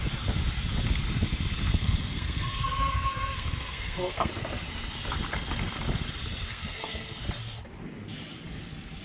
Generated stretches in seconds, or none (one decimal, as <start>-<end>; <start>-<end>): 1.7-4.3; 6.5-7.2